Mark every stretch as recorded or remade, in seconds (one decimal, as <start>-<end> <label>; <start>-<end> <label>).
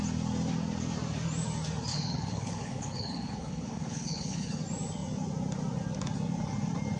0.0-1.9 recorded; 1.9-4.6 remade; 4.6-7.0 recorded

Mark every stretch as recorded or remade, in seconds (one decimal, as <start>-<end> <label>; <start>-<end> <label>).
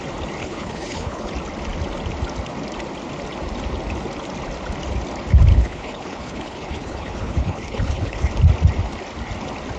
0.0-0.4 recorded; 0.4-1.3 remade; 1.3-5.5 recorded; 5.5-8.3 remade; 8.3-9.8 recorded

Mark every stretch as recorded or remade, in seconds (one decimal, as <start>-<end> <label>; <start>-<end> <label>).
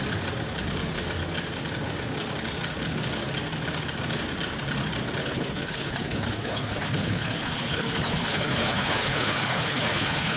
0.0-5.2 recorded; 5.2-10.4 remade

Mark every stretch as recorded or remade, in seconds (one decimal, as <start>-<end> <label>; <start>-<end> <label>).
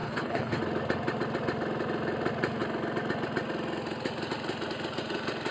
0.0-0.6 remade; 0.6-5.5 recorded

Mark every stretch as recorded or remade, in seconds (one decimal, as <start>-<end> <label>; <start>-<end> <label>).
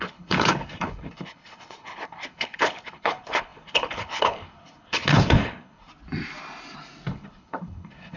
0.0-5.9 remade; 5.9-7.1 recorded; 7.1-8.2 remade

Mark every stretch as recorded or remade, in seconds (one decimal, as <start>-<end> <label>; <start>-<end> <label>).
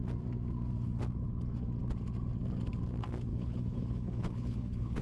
0.0-3.3 recorded; 3.3-5.0 remade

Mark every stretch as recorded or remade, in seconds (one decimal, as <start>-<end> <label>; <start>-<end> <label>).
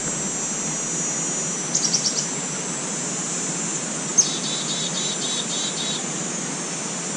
0.0-7.2 recorded